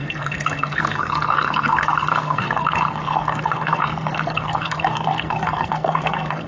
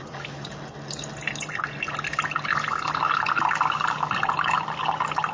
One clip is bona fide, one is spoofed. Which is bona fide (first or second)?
second